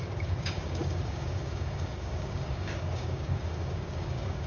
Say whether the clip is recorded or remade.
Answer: remade